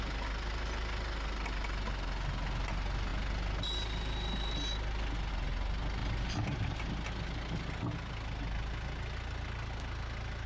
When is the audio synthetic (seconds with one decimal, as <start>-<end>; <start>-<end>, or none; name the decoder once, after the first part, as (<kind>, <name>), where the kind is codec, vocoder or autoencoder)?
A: 6.0-6.9 (vocoder, BigVGAN v2)

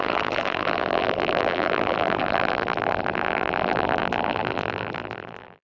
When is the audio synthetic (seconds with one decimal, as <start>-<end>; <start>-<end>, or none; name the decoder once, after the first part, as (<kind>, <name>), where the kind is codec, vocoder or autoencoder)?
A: 0.0-5.6 (vocoder, BigVGAN v2)

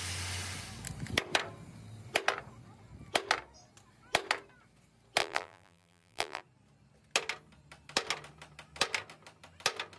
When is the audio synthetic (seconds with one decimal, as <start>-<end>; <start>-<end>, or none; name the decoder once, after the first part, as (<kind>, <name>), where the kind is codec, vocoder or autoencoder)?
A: 5.2-6.4 (vocoder, BigVGAN v2)

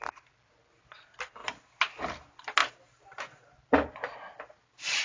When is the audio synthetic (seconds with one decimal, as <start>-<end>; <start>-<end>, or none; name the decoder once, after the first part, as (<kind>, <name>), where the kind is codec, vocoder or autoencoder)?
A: none

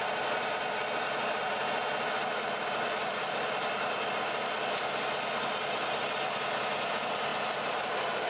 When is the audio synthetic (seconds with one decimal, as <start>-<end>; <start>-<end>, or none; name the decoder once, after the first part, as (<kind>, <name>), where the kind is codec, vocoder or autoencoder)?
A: 3.0-3.8 (vocoder, BigVGAN v2)

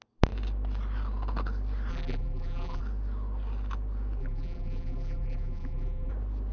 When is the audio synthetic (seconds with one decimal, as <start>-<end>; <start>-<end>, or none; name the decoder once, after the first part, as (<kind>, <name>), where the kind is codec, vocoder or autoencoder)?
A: 1.9-2.8 (vocoder, BigVGAN v2); 4.2-6.1

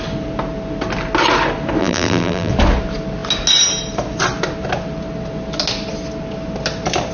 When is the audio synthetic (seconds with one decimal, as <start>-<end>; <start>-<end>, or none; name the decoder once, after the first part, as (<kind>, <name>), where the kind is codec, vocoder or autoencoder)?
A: 1.8-2.5 (vocoder, BigVGAN v2)

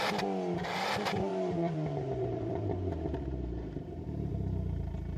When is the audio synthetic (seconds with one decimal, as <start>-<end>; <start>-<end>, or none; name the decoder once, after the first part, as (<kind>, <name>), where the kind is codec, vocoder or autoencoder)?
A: 1.3-4.3 (vocoder, BigVGAN v2)